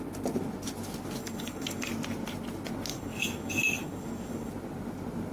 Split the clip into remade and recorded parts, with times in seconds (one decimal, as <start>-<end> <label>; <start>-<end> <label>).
0.0-1.2 recorded; 1.2-1.9 remade; 1.9-2.9 recorded; 2.9-4.5 remade; 4.5-5.3 recorded

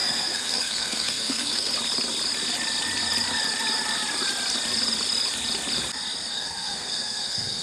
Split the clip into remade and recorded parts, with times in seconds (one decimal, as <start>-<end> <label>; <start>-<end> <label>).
0.0-1.7 remade; 1.7-6.3 recorded; 6.3-7.6 remade

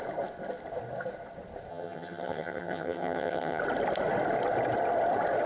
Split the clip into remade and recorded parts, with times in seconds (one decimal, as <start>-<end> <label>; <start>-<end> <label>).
0.0-1.7 recorded; 1.7-3.6 remade; 3.6-5.5 recorded

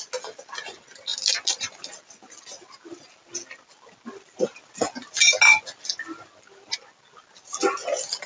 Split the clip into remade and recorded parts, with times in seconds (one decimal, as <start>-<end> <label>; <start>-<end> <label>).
0.0-8.3 recorded

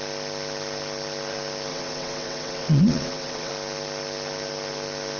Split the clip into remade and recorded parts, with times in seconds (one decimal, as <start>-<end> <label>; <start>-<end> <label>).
0.0-1.7 recorded; 1.7-3.5 remade; 3.5-5.2 recorded

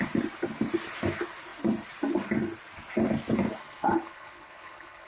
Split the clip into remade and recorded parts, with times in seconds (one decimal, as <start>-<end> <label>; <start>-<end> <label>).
0.0-3.6 recorded; 3.6-5.1 remade